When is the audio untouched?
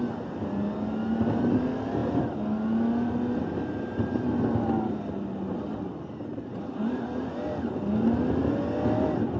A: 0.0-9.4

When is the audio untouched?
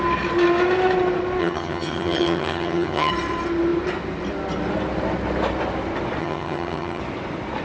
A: 0.0-1.4; 3.1-6.2; 7.0-7.6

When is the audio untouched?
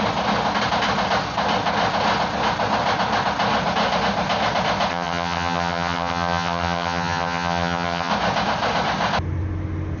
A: 0.0-4.9; 8.1-10.0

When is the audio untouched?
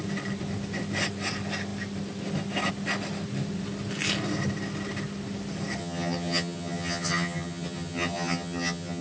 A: 0.0-5.8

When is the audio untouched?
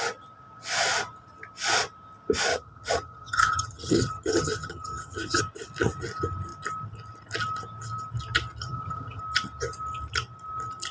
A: 0.0-2.5; 5.4-8.6; 9.2-10.9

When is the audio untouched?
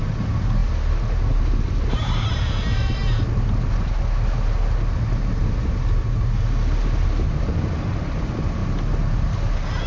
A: 0.0-9.9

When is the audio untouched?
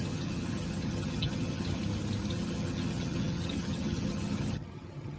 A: 1.8-2.3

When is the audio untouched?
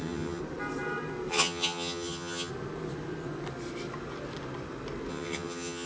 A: 0.4-1.3; 2.5-5.1